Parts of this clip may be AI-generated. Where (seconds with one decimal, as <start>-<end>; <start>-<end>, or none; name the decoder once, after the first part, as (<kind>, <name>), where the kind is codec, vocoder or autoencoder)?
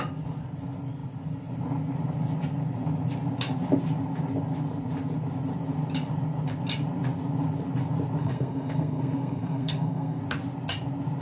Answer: 8.2-10.2 (codec, SNAC)